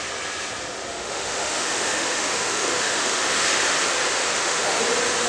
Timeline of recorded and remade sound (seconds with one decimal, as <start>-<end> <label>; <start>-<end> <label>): 0.0-0.9 recorded; 0.9-3.6 remade; 3.6-4.2 recorded; 4.2-4.8 remade; 4.8-5.3 recorded